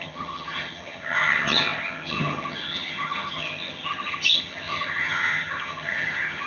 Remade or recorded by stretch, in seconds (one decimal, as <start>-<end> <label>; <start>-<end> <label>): 0.0-6.5 remade